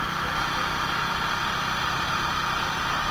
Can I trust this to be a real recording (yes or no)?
no